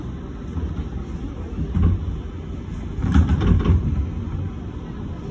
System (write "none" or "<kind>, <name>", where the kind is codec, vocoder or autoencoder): none